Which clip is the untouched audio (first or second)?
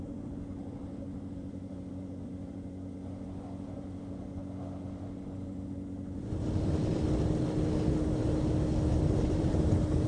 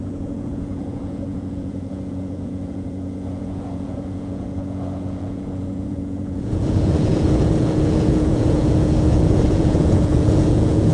first